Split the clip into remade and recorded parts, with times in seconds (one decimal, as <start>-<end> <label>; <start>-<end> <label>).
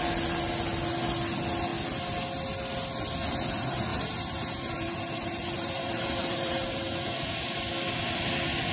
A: 0.0-3.9 recorded; 3.9-7.7 remade; 7.7-8.7 recorded